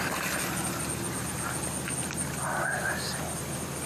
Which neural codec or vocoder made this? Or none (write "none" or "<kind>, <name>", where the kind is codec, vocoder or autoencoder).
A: none